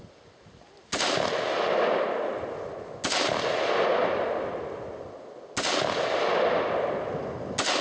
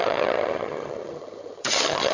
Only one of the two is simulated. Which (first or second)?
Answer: second